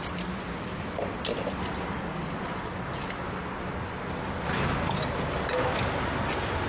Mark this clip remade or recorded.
recorded